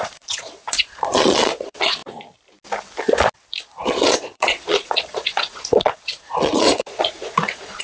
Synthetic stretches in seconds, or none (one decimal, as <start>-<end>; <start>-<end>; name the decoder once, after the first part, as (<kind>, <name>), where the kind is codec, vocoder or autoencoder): 0.0-2.0 (vocoder, Vocos); 3.6-7.8